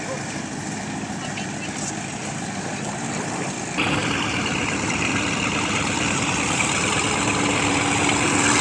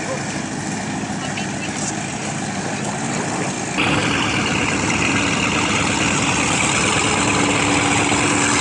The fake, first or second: first